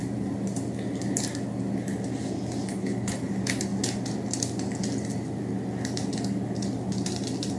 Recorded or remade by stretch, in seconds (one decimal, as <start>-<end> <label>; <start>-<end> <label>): 0.0-2.7 recorded; 2.7-3.3 remade; 3.3-7.6 recorded